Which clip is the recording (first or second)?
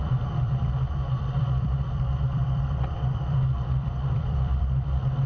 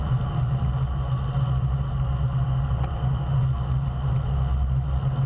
second